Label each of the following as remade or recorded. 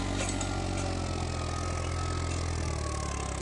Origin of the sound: recorded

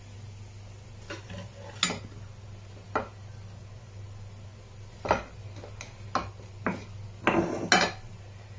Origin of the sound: recorded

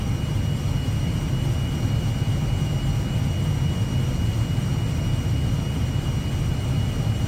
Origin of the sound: recorded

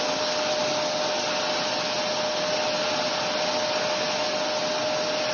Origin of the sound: recorded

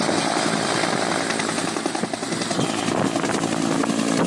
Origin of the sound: recorded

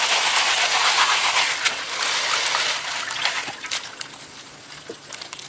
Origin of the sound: recorded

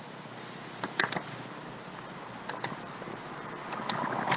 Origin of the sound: recorded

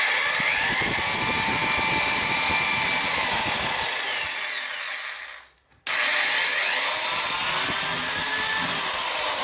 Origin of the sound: recorded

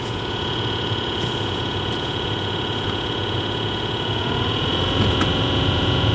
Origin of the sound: remade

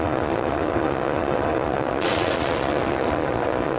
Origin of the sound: remade